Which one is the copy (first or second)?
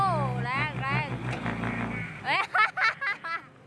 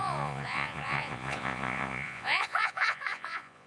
second